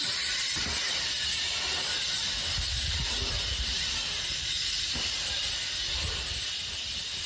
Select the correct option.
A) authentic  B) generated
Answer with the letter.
A